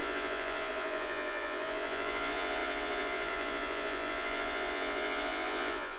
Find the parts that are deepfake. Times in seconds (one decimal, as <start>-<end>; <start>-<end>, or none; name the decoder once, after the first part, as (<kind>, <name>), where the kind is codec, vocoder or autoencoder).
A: 0.0-6.0 (vocoder, Vocos)